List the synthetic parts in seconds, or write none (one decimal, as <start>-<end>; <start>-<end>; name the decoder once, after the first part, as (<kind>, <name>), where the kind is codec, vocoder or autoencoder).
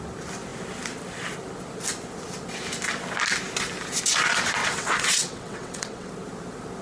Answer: 4.6-6.1 (vocoder, WaveNeXt)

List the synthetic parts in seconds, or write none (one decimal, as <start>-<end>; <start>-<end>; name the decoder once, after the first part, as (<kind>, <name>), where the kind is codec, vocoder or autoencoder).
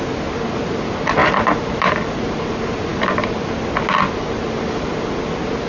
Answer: 1.2-2.4 (vocoder, BigVGAN v2)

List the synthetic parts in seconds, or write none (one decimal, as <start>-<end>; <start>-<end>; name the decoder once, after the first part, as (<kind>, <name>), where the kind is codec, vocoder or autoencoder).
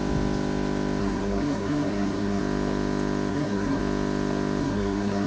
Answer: 1.0-2.4 (codec, SNAC); 3.3-3.8; 4.6-5.3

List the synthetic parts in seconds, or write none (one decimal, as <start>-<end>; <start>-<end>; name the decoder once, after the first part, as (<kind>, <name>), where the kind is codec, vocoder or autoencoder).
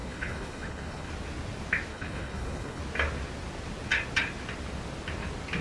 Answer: 0.0-1.1 (codec, HILCodec); 1.9-2.8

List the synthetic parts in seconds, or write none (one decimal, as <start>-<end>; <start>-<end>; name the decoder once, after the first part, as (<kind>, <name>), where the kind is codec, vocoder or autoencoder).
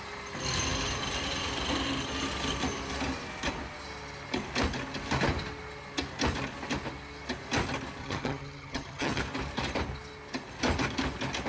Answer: 8.0-9.2 (vocoder, HiFi-GAN)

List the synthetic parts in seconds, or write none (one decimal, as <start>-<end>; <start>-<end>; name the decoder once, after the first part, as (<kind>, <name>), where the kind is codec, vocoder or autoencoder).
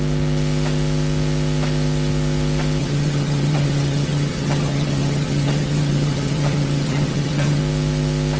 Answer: 2.8-7.6 (vocoder, HiFi-GAN)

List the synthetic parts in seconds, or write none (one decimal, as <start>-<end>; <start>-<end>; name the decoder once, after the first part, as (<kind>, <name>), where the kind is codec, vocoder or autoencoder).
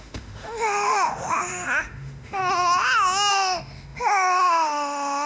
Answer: 0.0-2.4 (autoencoder, DAC-VAE); 3.3-5.3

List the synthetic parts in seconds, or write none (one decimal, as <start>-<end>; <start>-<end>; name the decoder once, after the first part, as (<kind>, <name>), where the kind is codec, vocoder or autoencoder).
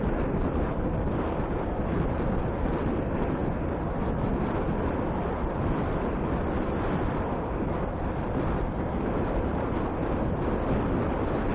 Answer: 0.0-3.4 (vocoder, BigVGAN v2); 4.7-11.5